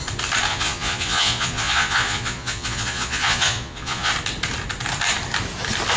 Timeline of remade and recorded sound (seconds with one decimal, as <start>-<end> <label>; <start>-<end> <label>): 0.0-0.5 recorded; 0.5-4.1 remade; 4.1-6.0 recorded